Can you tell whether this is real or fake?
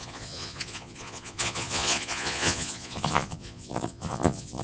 fake